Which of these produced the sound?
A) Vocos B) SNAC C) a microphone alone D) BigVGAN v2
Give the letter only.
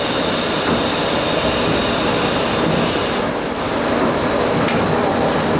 C